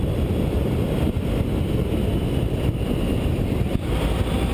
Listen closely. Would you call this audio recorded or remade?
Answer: recorded